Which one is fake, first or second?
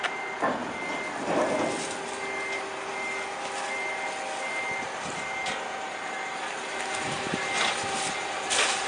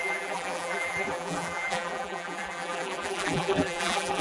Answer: second